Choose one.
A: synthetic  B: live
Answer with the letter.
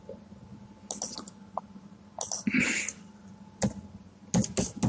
B